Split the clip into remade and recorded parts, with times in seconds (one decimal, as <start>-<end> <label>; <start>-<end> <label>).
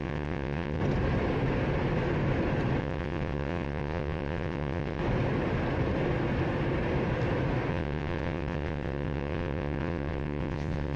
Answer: 0.0-0.8 remade; 0.8-2.8 recorded; 2.8-5.0 remade; 5.0-7.7 recorded; 7.7-11.0 remade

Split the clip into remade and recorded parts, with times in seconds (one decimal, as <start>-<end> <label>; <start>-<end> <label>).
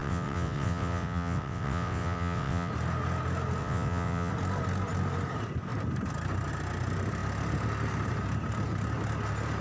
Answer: 0.0-2.7 remade; 2.7-3.6 recorded; 3.6-4.3 remade; 4.3-9.6 recorded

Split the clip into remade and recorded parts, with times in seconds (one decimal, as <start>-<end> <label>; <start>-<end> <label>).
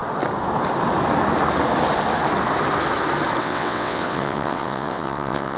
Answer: 0.0-3.4 recorded; 3.4-5.6 remade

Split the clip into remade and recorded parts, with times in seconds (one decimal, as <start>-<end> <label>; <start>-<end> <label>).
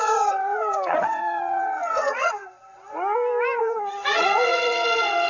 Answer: 0.0-2.4 remade; 2.4-3.6 recorded; 3.6-5.3 remade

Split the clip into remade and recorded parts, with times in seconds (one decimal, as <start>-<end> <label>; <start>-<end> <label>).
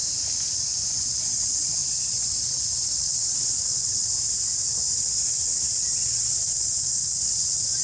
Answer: 0.0-0.9 recorded; 0.9-4.1 remade; 4.1-5.0 recorded; 5.0-7.8 remade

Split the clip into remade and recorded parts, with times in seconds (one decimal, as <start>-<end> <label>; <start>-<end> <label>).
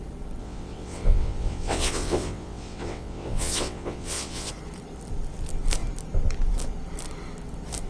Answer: 0.0-0.4 recorded; 0.4-4.5 remade; 4.5-7.9 recorded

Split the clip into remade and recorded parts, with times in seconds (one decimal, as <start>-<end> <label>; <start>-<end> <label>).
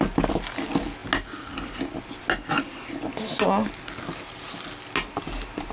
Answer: 0.0-5.7 recorded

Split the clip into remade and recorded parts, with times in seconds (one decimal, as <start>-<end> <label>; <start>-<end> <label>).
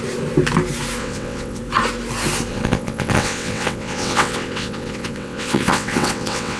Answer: 0.0-1.0 recorded; 1.0-1.6 remade; 1.6-2.5 recorded; 2.5-6.6 remade